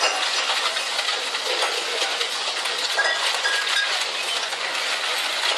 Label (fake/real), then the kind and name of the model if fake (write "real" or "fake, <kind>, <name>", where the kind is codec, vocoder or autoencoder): fake, vocoder, Vocos